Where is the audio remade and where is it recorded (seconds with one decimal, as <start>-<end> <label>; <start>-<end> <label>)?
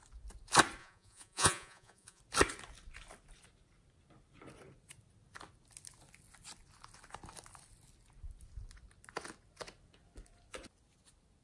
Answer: 0.0-0.8 recorded; 0.8-2.2 remade; 2.2-11.4 recorded